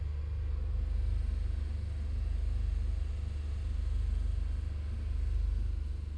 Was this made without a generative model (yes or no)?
yes